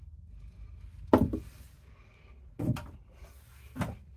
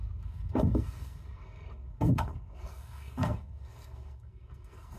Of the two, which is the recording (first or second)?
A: first